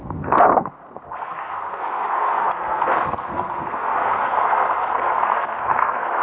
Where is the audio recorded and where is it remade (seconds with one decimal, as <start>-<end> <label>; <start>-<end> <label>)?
0.0-6.2 remade